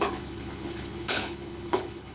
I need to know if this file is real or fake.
fake